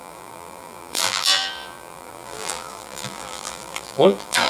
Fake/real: fake